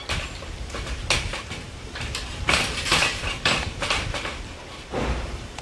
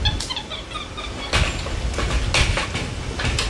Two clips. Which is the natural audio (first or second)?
second